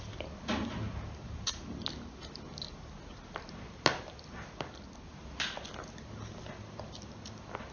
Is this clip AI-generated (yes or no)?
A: no